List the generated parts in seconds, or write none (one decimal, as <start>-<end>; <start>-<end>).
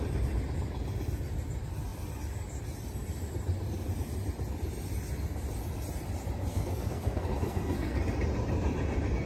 6.5-8.0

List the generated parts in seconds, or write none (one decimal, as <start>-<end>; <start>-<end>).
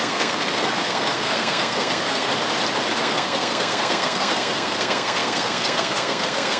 0.0-2.3; 3.0-6.6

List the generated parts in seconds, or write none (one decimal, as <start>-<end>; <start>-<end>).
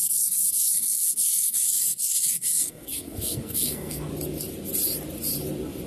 0.0-4.1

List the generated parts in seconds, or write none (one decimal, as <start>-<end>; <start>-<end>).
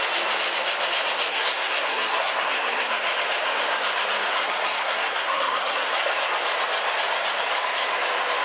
1.3-2.9; 4.2-6.3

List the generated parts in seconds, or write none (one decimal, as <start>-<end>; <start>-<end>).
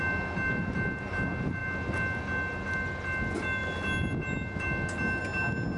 none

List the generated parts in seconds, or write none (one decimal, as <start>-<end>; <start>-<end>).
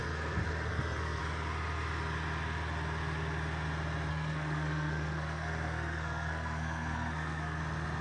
0.0-1.2; 4.1-7.6